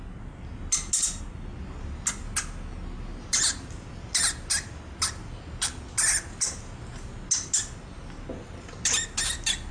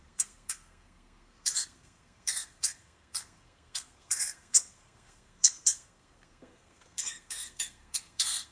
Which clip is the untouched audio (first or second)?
first